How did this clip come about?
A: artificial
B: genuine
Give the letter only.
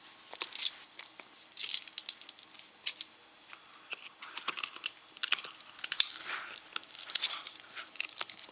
B